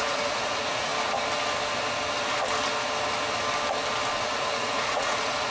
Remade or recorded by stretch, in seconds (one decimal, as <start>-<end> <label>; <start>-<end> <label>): 0.0-0.9 remade; 0.9-4.2 recorded; 4.2-5.5 remade